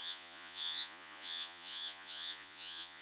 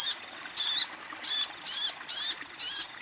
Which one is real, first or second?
second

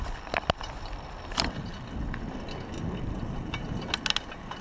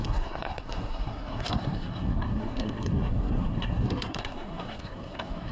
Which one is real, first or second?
first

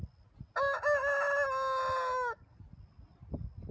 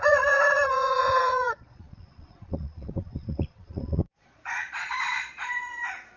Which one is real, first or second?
first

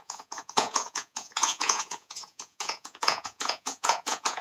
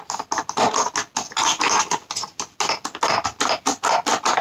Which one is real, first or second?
second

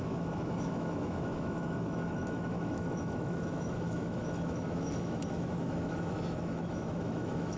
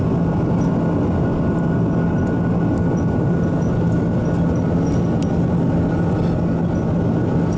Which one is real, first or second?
second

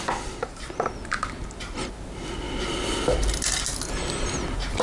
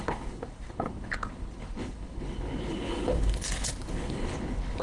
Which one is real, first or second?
first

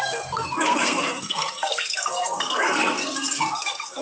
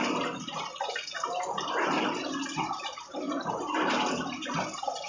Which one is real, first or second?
second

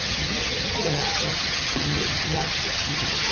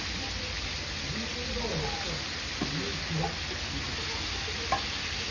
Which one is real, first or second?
second